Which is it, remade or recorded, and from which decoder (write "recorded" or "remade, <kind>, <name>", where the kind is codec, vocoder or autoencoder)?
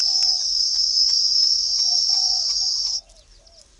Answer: recorded